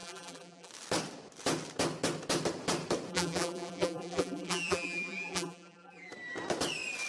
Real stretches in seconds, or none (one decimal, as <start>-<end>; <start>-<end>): 0.7-3.1; 6.1-7.1